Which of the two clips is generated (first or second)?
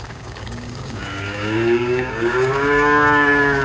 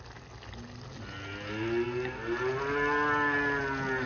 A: first